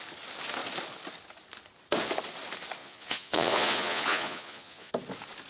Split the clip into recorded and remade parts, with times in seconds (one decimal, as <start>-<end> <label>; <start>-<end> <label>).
0.0-2.8 recorded; 2.8-4.9 remade; 4.9-5.5 recorded

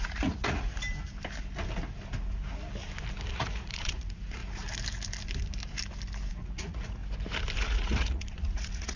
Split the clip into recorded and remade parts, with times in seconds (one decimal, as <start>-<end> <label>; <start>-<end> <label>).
0.0-0.7 remade; 0.7-3.3 recorded; 3.3-4.4 remade; 4.4-6.3 recorded; 6.3-7.0 remade; 7.0-7.6 recorded; 7.6-9.0 remade

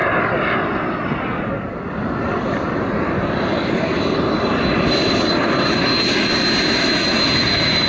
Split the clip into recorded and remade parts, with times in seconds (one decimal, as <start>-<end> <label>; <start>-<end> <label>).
0.0-7.9 recorded

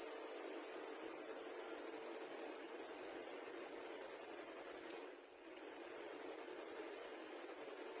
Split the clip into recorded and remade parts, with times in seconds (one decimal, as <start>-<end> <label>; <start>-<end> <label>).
0.0-2.3 recorded; 2.3-7.1 remade; 7.1-8.0 recorded

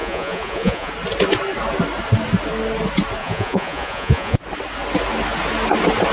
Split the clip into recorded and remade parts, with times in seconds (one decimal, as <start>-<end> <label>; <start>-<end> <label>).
0.0-0.9 remade; 0.9-3.2 recorded; 3.2-4.4 remade; 4.4-6.1 recorded

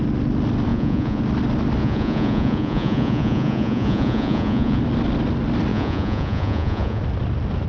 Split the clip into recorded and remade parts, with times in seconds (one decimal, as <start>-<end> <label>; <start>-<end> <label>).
0.0-0.7 recorded; 0.7-1.2 remade; 1.2-1.8 recorded; 1.8-4.8 remade; 4.8-5.7 recorded; 5.7-7.0 remade; 7.0-7.7 recorded

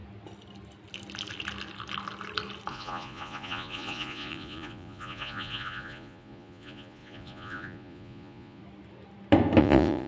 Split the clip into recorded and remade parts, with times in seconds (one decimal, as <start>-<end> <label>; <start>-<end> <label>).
0.0-2.7 recorded; 2.7-8.6 remade; 8.6-9.6 recorded; 9.6-10.1 remade

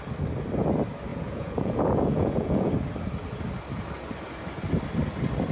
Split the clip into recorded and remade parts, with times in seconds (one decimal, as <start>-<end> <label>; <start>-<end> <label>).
0.0-1.1 recorded; 1.1-2.7 remade; 2.7-5.5 recorded